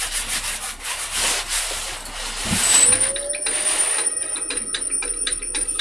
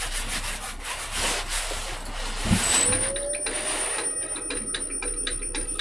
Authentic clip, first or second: second